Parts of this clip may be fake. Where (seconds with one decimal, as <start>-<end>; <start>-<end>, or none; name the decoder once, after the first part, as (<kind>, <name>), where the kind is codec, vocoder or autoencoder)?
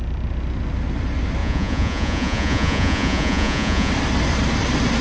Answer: 1.4-3.9 (vocoder, Vocos)